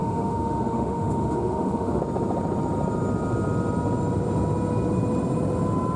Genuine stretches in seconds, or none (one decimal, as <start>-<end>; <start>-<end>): 2.0-6.0

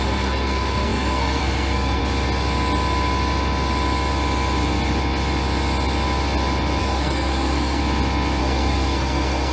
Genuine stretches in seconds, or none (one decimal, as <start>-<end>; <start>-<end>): 2.0-6.8; 7.8-8.4

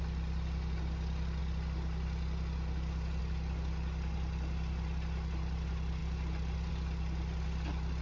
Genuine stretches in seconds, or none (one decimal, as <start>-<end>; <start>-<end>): 0.0-8.0

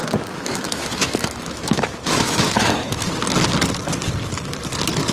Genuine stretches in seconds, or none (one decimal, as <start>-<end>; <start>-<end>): 3.1-5.1

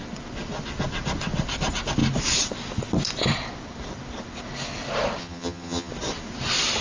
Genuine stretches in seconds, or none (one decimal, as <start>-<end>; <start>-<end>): 0.0-5.2; 5.9-6.8

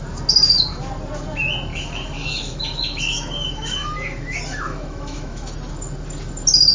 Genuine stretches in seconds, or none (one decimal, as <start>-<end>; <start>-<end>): 0.0-1.7; 5.7-6.7